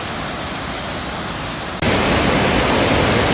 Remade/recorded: recorded